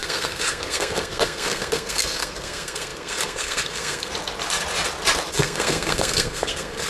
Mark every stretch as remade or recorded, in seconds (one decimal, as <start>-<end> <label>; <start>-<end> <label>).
0.0-4.1 remade; 4.1-5.3 recorded; 5.3-6.9 remade